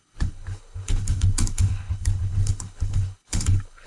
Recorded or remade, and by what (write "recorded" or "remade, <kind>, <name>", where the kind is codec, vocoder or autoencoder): remade, codec, HILCodec